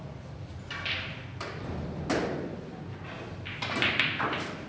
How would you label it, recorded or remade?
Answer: recorded